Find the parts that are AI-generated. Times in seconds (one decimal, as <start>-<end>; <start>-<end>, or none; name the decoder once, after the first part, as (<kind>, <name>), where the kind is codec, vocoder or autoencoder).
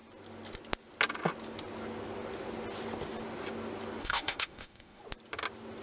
4.0-5.0 (autoencoder, DAC-VAE)